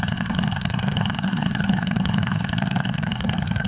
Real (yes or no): no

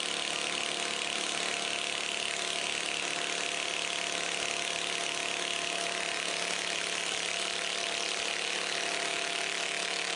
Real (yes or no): yes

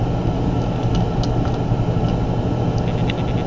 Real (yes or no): yes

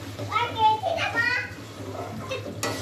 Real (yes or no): yes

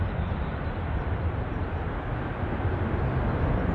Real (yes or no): yes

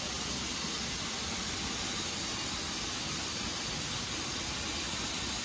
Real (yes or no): yes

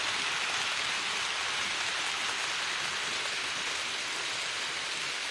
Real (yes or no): yes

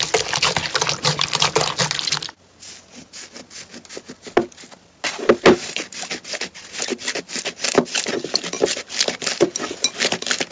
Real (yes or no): yes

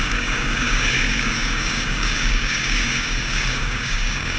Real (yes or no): no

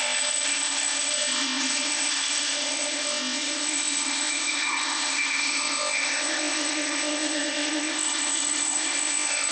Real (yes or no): no